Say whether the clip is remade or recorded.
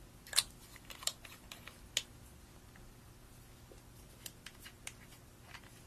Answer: recorded